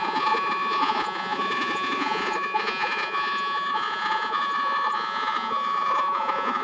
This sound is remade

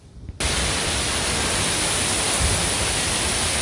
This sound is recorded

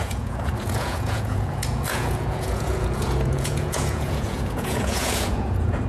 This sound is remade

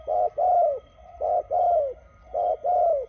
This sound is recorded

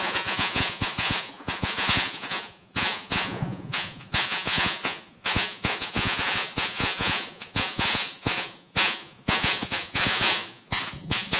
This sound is remade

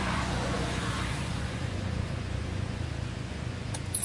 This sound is remade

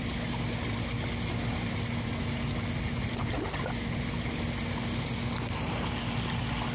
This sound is recorded